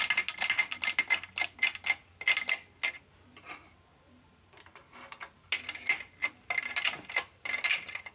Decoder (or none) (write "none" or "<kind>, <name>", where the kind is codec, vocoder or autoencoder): none